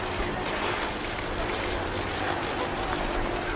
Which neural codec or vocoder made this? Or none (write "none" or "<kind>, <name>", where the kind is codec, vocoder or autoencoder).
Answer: none